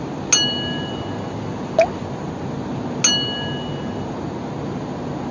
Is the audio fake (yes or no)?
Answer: no